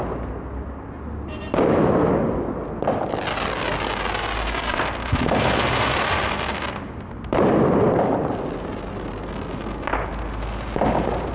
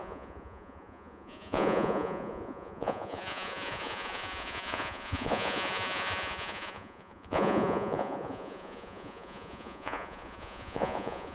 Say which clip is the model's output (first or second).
second